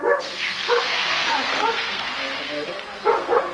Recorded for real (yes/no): no